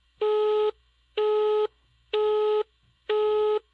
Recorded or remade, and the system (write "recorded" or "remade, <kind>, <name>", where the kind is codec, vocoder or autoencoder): remade, autoencoder, DAC-VAE